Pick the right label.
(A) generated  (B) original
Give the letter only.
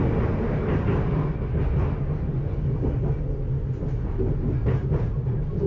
B